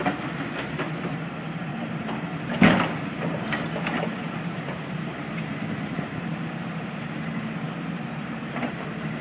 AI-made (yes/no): yes